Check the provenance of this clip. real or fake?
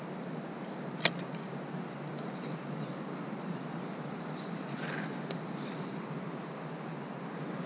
real